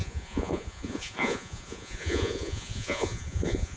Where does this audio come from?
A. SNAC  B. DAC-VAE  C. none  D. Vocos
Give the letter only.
D